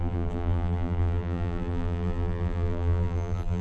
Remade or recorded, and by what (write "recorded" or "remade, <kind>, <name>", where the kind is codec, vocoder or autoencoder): remade, vocoder, BigVGAN v2